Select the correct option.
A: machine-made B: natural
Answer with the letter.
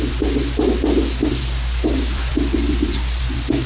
B